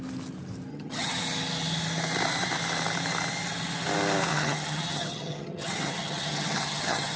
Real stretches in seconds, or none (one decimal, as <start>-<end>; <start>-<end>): 0.0-0.7; 1.2-4.3